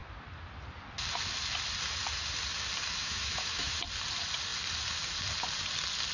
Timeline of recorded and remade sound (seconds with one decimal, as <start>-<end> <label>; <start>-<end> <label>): 0.0-3.0 recorded; 3.0-3.8 remade; 3.8-6.1 recorded